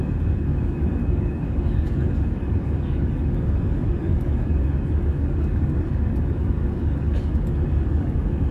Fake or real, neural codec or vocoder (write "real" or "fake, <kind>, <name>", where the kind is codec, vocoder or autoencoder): fake, codec, DAC